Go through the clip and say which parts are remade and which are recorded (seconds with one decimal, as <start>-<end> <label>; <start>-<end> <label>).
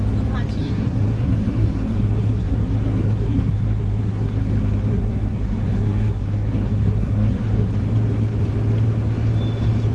0.0-0.6 recorded; 0.6-4.5 remade; 4.5-4.9 recorded; 4.9-7.7 remade; 7.7-9.9 recorded